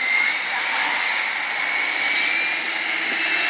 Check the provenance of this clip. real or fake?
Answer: real